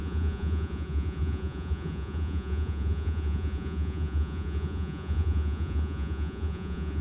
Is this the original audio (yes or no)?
no